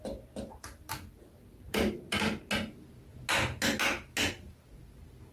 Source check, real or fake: real